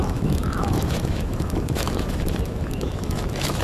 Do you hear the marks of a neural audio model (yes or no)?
yes